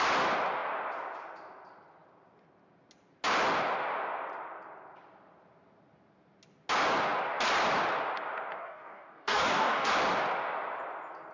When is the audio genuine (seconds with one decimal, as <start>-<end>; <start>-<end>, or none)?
0.0-8.6; 9.9-11.3